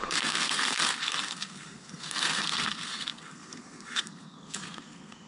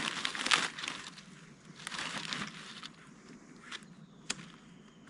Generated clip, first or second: first